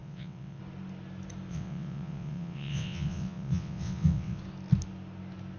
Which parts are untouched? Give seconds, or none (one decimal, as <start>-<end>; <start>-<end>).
0.6-1.5; 4.4-5.6